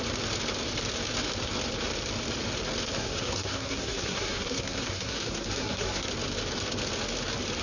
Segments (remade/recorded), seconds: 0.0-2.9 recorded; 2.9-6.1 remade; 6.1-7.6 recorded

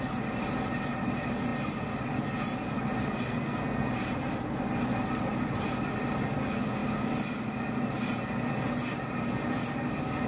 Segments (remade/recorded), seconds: 0.0-3.3 recorded; 3.3-3.9 remade; 3.9-10.3 recorded